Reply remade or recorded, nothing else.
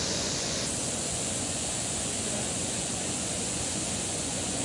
remade